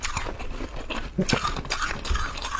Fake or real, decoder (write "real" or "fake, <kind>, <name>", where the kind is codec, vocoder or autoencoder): real